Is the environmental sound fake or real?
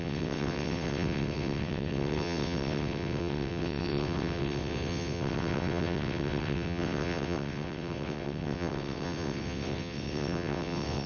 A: fake